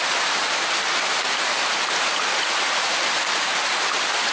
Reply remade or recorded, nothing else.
recorded